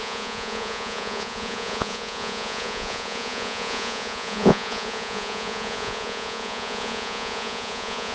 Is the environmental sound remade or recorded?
remade